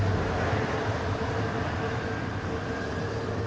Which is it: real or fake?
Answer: real